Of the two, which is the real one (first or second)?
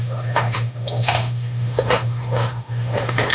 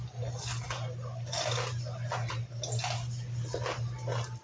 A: second